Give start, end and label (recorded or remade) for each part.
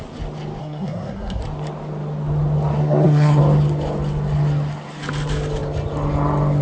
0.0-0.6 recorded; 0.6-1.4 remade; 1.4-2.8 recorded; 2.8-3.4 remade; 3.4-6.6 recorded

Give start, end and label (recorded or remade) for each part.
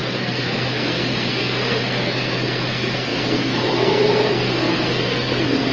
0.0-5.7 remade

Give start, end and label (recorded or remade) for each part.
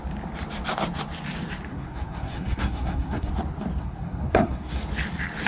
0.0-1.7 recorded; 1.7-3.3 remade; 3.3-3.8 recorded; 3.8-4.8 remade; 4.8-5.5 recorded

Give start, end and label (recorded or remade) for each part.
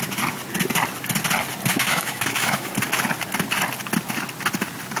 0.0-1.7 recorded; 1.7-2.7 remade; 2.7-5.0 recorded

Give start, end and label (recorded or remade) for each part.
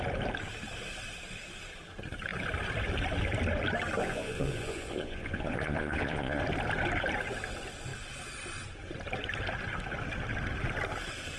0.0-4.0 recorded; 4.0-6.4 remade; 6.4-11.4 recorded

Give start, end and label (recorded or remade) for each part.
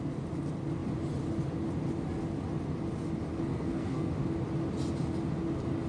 0.0-3.5 recorded; 3.5-4.1 remade; 4.1-5.9 recorded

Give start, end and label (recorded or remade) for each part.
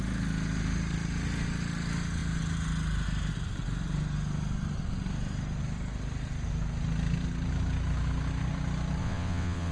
0.0-9.0 recorded; 9.0-9.7 remade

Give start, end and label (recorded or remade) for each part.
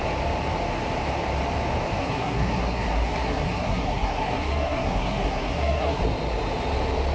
0.0-2.0 recorded; 2.0-6.0 remade; 6.0-7.1 recorded